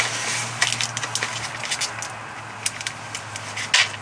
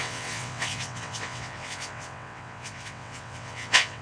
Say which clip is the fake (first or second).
second